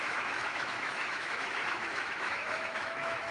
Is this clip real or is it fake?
fake